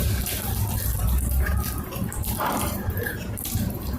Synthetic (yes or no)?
yes